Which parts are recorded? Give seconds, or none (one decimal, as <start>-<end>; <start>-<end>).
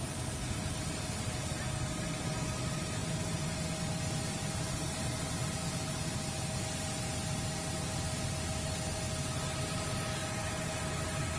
0.0-11.4